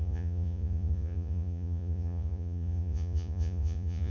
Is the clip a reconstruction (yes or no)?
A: yes